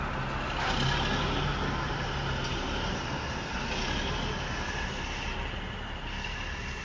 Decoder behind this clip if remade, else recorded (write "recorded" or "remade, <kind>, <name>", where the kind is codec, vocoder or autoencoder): recorded